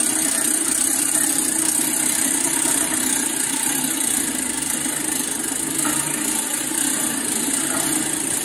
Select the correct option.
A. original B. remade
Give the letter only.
B